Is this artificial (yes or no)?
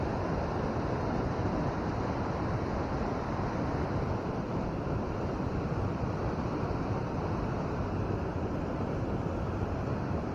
yes